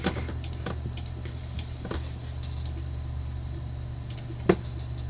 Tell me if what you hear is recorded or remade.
recorded